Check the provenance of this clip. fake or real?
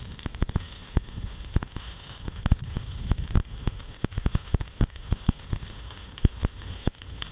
fake